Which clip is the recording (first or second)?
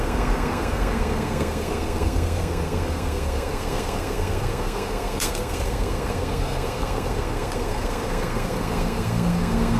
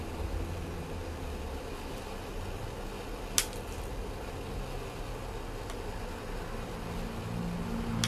second